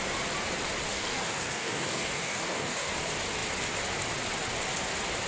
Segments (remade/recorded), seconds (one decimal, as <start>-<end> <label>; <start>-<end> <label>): 0.0-0.9 recorded; 0.9-2.9 remade; 2.9-5.3 recorded